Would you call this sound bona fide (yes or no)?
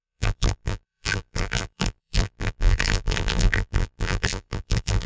no